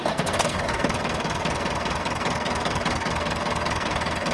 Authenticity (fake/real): fake